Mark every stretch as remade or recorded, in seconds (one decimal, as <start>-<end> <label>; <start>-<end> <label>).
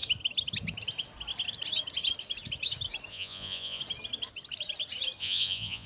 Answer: 0.0-3.1 recorded; 3.1-3.8 remade; 3.8-5.2 recorded; 5.2-5.9 remade